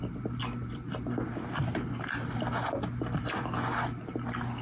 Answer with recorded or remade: recorded